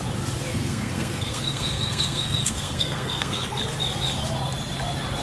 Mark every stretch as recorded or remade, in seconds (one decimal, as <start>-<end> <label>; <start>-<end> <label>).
0.0-0.5 recorded; 0.5-3.6 remade; 3.6-5.2 recorded